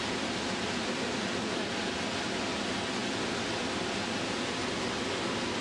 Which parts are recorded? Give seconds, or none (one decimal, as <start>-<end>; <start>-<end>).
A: 0.0-5.6